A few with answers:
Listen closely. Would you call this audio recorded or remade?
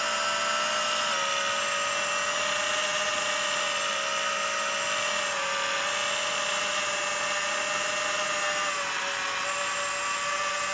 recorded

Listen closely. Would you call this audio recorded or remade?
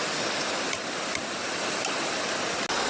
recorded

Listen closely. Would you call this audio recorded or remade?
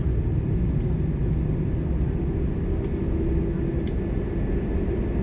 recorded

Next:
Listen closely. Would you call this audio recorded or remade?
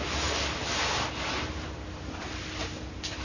recorded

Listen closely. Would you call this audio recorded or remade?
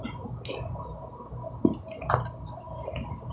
recorded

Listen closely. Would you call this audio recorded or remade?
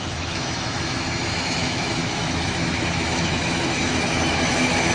remade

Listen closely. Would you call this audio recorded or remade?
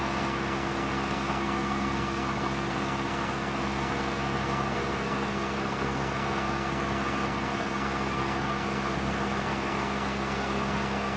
remade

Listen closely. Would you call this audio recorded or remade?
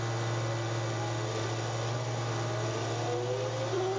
recorded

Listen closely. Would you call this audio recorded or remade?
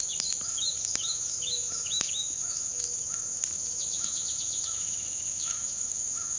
remade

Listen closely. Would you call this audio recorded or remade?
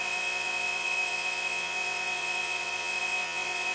remade